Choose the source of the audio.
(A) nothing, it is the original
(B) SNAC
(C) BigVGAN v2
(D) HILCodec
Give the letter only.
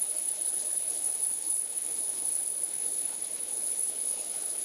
D